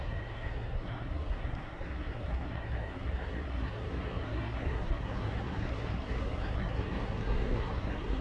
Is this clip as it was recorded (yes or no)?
no